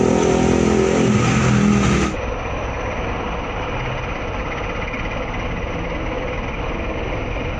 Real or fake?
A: real